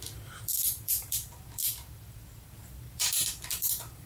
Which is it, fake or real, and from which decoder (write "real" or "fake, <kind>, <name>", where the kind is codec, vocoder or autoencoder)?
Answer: fake, vocoder, BigVGAN v2